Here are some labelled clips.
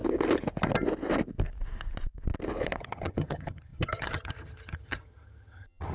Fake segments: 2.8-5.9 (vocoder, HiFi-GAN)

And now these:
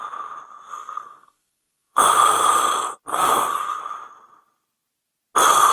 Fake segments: 0.7-2.0 (codec, SNAC); 3.1-3.8

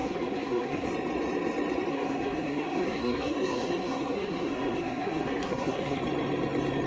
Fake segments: 0.0-0.9 (codec, SNAC); 1.9-6.0

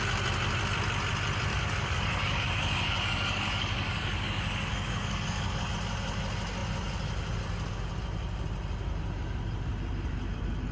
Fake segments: 1.5-5.7 (codec, DAC)

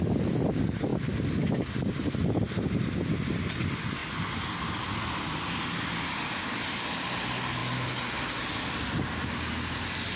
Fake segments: none

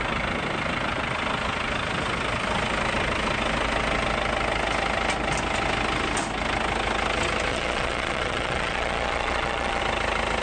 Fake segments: 7.5-9.8 (vocoder, Vocos)

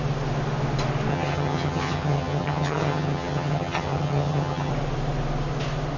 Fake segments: 1.1-4.7 (vocoder, HiFi-GAN)